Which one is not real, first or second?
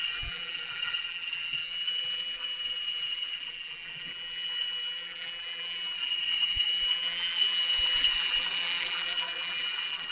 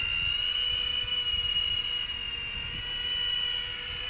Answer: first